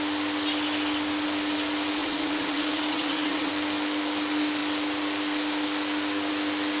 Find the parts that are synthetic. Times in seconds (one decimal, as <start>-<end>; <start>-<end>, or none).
2.0-3.5